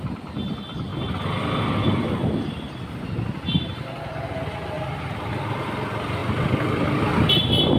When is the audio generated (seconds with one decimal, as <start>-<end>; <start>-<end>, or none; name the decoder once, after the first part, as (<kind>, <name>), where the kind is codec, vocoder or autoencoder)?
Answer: none

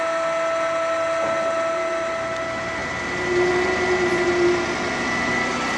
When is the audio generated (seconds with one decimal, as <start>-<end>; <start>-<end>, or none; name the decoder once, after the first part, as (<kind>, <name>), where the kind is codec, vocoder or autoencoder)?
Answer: none